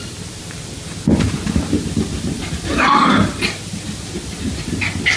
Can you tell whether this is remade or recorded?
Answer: recorded